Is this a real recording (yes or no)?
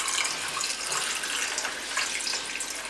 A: yes